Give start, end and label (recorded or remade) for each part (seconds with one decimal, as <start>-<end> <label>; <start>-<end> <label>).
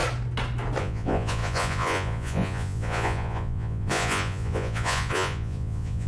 0.0-0.8 recorded; 0.8-6.1 remade